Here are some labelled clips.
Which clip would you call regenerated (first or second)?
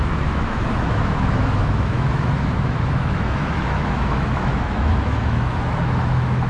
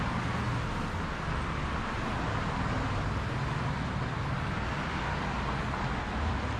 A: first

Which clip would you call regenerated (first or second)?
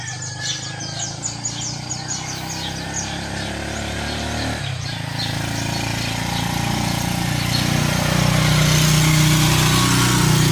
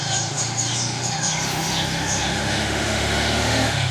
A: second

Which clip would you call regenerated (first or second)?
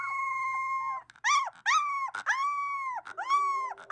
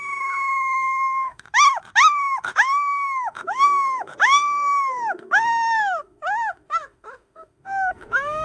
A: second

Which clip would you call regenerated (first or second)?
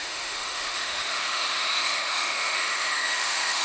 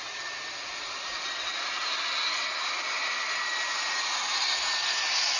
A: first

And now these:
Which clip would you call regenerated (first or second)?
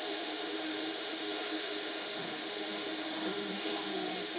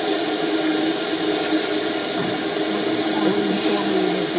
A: first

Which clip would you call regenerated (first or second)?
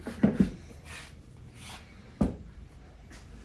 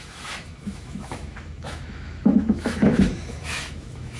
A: second